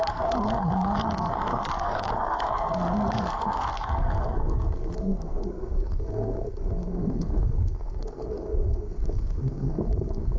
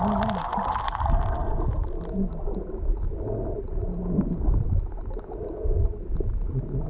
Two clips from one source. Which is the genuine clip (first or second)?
second